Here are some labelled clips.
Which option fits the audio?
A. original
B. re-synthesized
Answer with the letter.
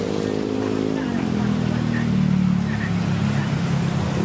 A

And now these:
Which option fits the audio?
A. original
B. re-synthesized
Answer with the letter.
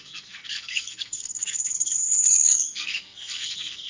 B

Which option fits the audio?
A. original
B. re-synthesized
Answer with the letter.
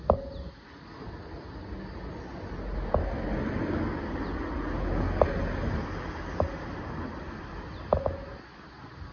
A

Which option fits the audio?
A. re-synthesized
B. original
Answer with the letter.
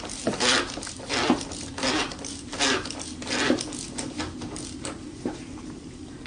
B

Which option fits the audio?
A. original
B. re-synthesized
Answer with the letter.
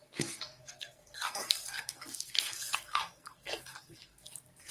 B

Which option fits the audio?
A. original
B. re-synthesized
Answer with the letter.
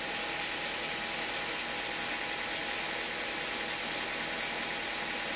A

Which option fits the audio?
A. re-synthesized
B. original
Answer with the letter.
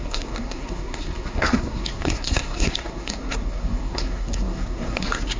A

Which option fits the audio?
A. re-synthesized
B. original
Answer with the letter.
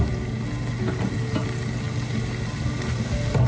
B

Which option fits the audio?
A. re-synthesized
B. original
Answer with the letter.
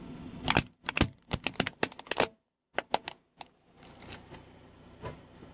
B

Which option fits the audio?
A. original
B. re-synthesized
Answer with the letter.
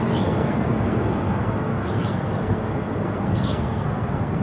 B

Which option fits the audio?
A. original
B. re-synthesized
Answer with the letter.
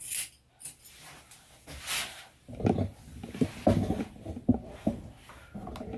A